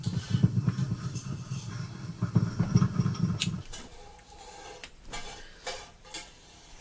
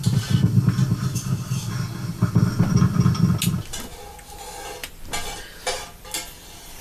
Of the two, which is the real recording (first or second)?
second